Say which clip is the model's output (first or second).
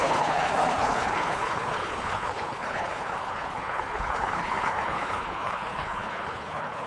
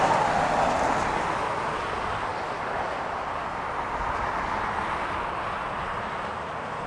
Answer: first